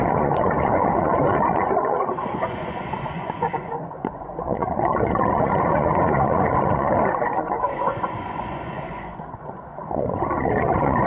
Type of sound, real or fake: fake